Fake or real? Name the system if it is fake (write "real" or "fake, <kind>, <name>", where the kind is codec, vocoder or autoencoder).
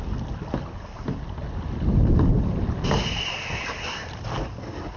real